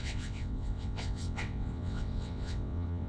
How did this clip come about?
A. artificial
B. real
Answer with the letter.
A